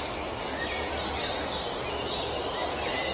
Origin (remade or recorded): recorded